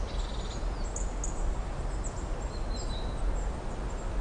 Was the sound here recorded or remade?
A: recorded